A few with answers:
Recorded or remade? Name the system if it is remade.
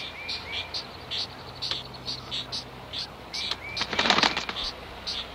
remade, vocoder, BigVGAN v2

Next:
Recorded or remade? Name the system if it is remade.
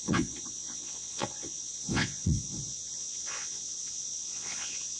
remade, vocoder, Vocos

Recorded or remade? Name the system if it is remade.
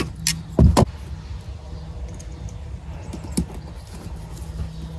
recorded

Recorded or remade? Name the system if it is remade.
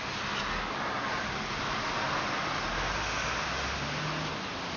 recorded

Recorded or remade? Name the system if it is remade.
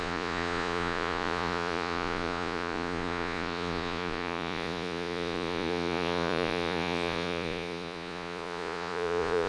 remade, vocoder, Vocos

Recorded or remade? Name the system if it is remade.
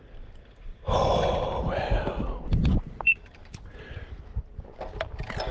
recorded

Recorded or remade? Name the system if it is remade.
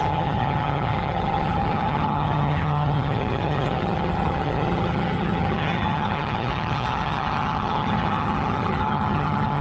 remade, vocoder, HiFi-GAN